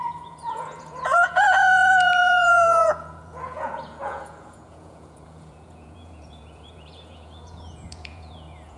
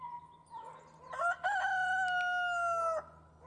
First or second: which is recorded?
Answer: second